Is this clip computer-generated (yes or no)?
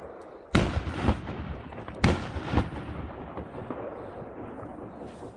no